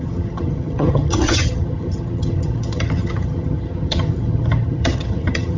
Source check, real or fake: fake